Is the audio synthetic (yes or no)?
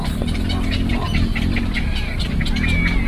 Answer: no